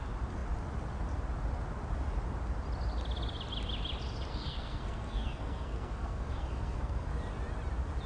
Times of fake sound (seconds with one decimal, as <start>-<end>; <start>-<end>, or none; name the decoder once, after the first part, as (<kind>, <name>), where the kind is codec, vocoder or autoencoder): 4.3-7.1 (codec, SNAC)